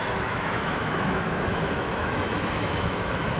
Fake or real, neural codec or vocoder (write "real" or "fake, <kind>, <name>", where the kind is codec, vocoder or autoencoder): fake, autoencoder, DAC-VAE